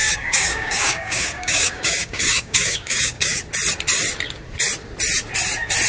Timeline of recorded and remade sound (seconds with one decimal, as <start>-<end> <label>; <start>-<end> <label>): 0.0-3.4 remade; 3.4-5.9 recorded